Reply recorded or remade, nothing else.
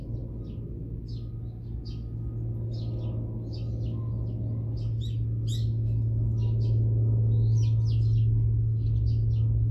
recorded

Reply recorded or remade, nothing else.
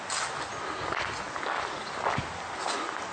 recorded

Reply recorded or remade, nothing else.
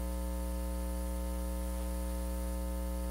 recorded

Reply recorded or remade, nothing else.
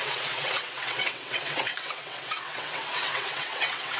remade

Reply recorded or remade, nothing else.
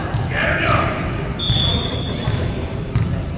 recorded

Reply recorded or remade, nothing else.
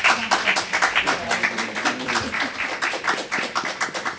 recorded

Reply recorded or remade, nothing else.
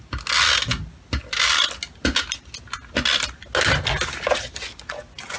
recorded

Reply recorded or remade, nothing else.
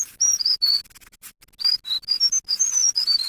recorded